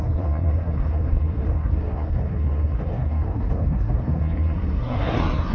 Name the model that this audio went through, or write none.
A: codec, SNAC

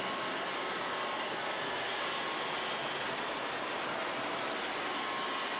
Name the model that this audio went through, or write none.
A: none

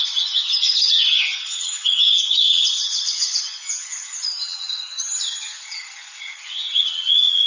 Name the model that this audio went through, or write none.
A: vocoder, HiFi-GAN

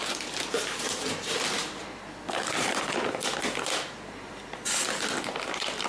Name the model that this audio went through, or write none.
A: none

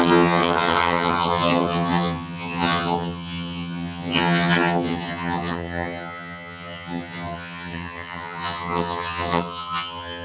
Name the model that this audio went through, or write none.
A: vocoder, HiFi-GAN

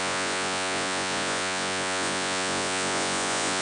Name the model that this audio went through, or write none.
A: vocoder, Vocos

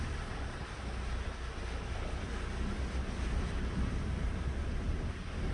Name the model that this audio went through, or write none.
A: none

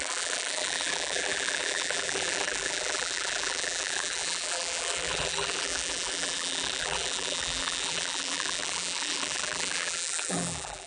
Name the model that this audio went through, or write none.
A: vocoder, BigVGAN v2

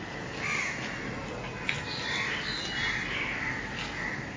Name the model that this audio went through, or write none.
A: none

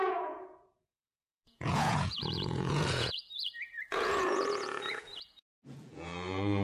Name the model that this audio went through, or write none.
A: vocoder, Vocos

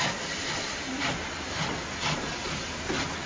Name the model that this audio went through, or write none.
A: none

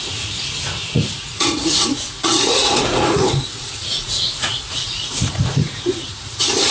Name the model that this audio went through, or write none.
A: vocoder, Vocos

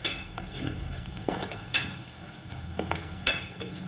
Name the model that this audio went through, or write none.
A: codec, SNAC